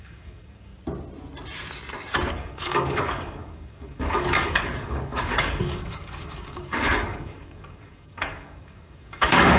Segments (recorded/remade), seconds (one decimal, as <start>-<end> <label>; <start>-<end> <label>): 0.0-0.7 remade; 0.7-2.3 recorded; 2.3-9.6 remade